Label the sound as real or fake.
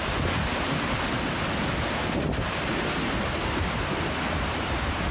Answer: real